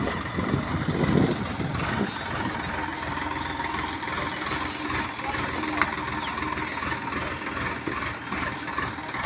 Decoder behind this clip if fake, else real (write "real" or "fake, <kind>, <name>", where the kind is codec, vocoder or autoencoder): real